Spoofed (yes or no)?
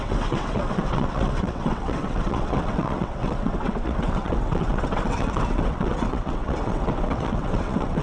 yes